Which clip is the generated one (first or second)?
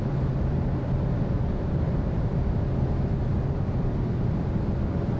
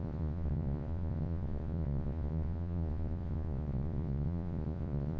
second